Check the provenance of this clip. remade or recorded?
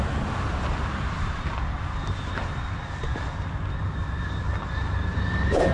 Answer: recorded